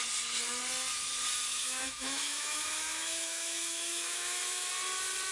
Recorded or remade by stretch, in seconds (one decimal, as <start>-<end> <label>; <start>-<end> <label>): 0.0-1.5 recorded; 1.5-4.7 remade; 4.7-5.3 recorded

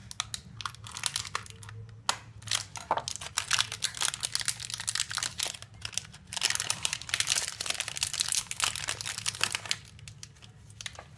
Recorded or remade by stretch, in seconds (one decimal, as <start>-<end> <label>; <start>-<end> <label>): 0.0-11.2 recorded

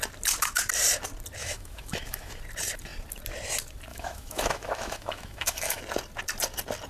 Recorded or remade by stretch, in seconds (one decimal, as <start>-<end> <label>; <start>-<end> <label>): 0.0-1.4 recorded; 1.4-2.4 remade; 2.4-3.9 recorded; 3.9-5.8 remade; 5.8-6.9 recorded